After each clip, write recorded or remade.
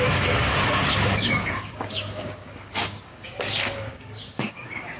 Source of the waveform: remade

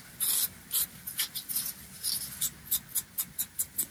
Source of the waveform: recorded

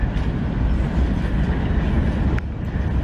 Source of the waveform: recorded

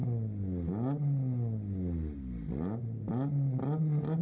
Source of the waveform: recorded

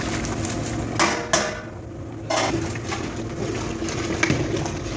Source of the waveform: recorded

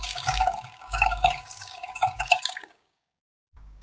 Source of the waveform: remade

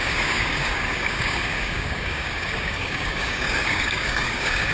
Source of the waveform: remade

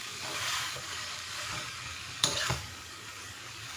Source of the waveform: remade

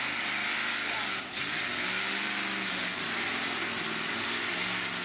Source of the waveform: recorded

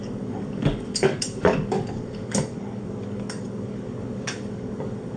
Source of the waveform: remade